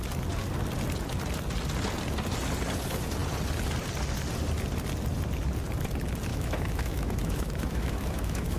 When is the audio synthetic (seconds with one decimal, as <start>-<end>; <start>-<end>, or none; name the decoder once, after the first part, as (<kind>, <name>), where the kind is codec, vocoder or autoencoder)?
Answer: 6.3-8.6 (autoencoder, DAC-VAE)

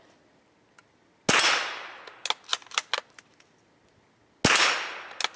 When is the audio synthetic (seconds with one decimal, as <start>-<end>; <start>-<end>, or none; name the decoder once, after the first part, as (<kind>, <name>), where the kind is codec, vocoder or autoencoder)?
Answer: none